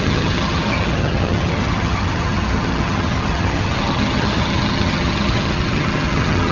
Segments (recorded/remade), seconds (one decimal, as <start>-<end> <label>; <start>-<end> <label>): 0.0-6.5 remade